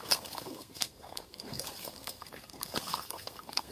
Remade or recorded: remade